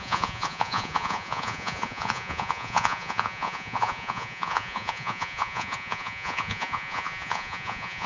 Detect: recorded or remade remade